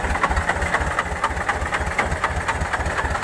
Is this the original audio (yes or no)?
yes